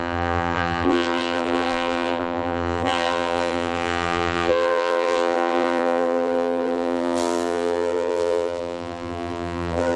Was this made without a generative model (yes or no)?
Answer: no